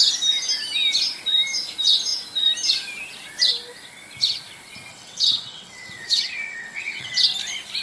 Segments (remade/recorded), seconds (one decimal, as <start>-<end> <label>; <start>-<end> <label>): 0.0-4.9 recorded; 4.9-7.2 remade; 7.2-7.8 recorded